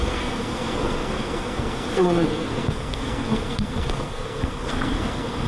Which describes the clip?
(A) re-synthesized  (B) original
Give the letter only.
A